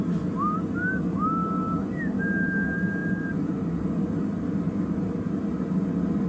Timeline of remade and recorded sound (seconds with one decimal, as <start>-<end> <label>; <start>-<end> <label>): 0.0-3.0 recorded; 3.0-3.9 remade; 3.9-6.3 recorded